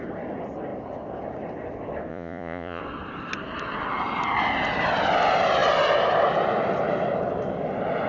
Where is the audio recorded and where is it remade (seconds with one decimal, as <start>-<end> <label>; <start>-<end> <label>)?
0.0-2.1 recorded; 2.1-2.8 remade; 2.8-8.1 recorded